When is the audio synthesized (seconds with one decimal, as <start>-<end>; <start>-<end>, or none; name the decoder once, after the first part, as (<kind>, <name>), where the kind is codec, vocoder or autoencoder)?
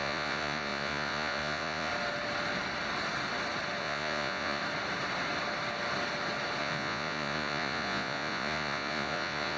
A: 0.0-1.9 (vocoder, Vocos); 3.8-4.6; 6.6-9.6